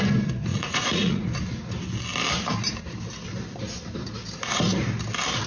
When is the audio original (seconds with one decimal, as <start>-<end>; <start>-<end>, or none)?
0.0-0.5; 1.3-5.5